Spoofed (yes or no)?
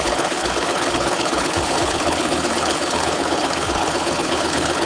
yes